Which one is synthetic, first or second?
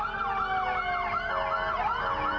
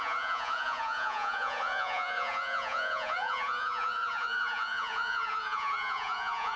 second